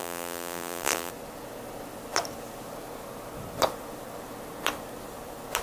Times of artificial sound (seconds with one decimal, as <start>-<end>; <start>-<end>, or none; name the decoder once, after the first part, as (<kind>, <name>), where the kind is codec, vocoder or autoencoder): 0.0-1.1 (vocoder, BigVGAN v2)